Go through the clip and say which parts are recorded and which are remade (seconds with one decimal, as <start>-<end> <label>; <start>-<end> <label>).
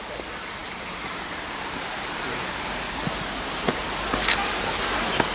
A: 0.0-0.6 recorded; 0.6-3.8 remade; 3.8-5.3 recorded